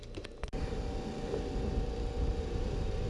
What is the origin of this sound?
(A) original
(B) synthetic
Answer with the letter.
B